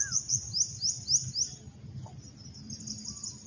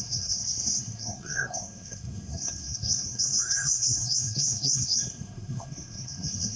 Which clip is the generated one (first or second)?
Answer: second